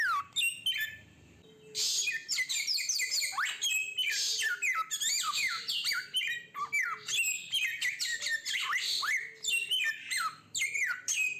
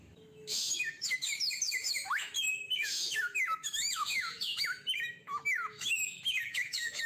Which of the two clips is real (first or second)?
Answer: first